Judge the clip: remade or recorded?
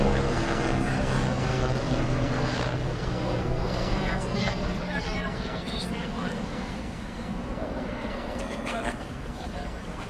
remade